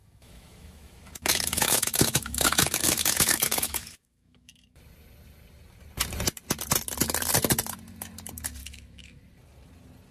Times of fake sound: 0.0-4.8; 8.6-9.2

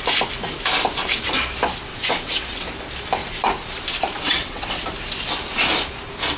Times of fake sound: 1.9-2.7; 4.2-4.9

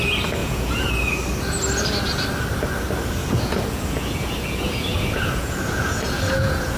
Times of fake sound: 0.4-0.9; 3.2-6.8

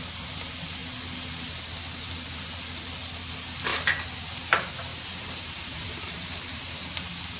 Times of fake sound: 4.9-6.6

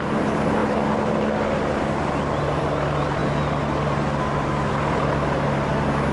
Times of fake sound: none

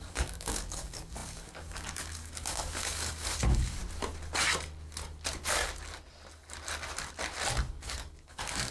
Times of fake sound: 0.0-3.8; 7.7-8.7

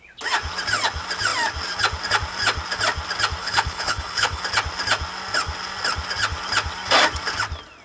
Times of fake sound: 3.4-4.4

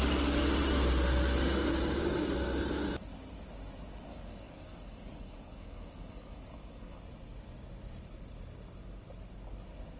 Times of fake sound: 4.1-7.0